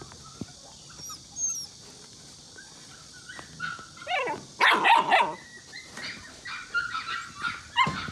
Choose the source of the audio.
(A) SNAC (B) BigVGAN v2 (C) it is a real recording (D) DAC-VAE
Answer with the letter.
C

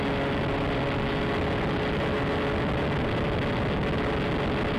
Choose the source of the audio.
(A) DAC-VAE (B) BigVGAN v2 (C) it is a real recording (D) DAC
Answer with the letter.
C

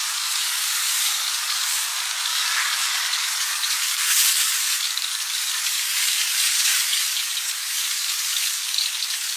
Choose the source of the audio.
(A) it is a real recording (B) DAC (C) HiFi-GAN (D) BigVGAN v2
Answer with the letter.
B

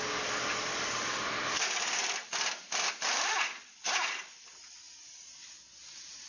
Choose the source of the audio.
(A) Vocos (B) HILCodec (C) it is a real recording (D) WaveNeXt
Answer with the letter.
C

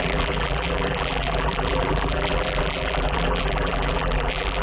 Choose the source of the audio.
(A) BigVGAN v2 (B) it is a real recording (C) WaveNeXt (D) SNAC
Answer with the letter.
A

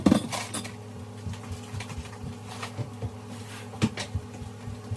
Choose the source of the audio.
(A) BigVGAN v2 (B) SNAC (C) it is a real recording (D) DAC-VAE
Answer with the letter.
C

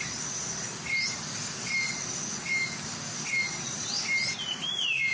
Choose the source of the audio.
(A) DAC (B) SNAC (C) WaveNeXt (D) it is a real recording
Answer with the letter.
D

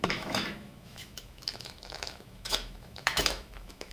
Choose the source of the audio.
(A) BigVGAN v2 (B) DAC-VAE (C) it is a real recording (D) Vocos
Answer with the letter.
B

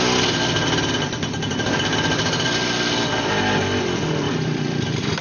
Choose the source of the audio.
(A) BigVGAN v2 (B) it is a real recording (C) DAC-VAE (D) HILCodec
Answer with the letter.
B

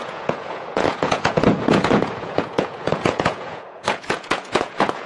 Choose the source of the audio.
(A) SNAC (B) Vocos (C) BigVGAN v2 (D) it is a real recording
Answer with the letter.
B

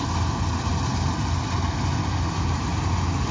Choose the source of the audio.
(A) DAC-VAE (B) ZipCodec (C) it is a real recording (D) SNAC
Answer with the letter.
C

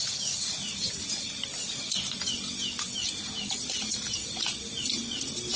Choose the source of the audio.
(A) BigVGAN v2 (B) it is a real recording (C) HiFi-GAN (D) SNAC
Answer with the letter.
B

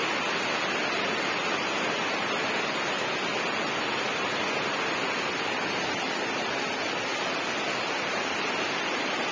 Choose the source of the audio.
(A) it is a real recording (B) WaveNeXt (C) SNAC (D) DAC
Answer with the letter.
A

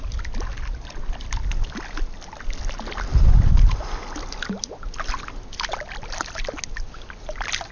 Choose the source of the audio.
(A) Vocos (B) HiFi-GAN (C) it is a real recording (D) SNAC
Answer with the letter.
C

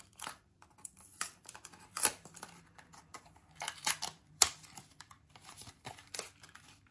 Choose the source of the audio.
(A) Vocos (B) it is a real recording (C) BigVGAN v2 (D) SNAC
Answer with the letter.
C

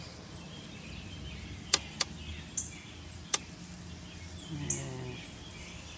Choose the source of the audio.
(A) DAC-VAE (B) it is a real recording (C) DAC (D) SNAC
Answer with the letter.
B